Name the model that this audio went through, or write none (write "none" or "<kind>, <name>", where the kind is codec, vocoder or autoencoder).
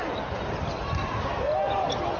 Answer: none